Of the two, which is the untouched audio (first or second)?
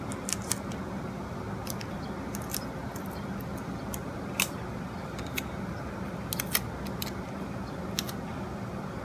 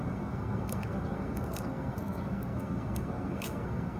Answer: first